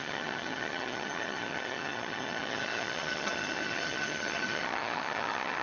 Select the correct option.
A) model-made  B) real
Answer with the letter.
A